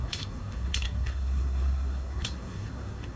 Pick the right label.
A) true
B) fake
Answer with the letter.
B